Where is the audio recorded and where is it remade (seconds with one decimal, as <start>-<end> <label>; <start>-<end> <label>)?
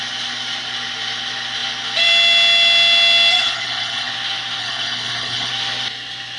0.0-3.4 recorded; 3.4-4.1 remade; 4.1-4.6 recorded; 4.6-5.5 remade; 5.5-6.4 recorded